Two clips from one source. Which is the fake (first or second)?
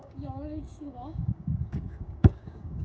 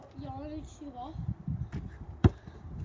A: first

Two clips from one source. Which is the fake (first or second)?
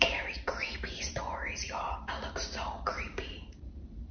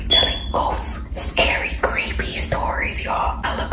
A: first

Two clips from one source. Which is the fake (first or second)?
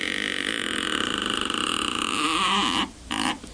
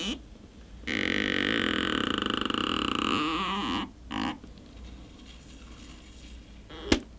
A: first